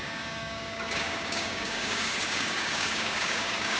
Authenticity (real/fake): fake